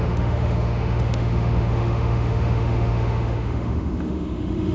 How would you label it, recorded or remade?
remade